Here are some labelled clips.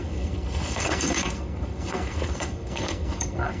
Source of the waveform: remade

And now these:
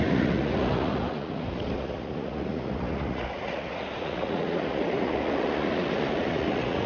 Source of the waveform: remade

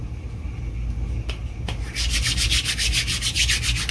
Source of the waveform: recorded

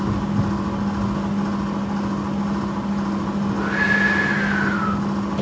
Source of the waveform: recorded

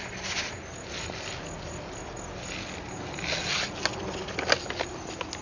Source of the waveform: recorded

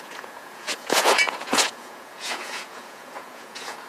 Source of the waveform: remade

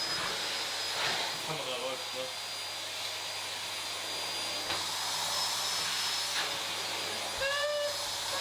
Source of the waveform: recorded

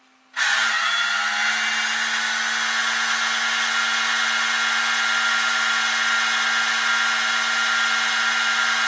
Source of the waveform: recorded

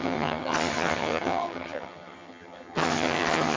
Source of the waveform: remade